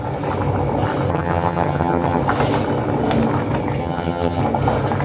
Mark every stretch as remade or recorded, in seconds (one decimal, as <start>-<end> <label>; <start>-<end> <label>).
0.0-1.1 recorded; 1.1-2.2 remade; 2.2-3.8 recorded; 3.8-4.4 remade; 4.4-5.0 recorded